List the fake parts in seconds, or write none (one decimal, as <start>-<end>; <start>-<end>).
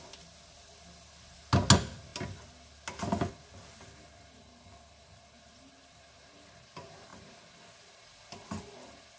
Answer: none